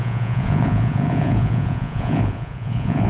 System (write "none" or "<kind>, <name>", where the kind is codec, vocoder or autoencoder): vocoder, Vocos